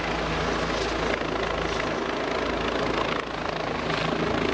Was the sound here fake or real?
real